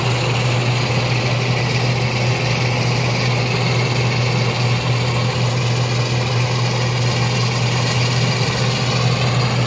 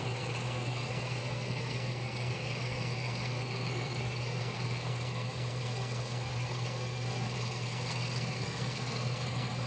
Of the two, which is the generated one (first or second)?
second